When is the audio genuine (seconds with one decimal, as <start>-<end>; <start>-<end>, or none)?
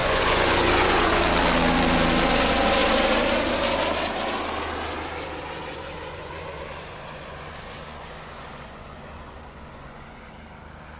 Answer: 1.2-5.7; 10.3-11.0